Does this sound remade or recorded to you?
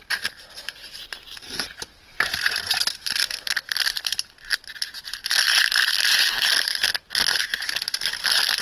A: recorded